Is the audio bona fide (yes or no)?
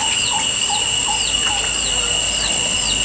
yes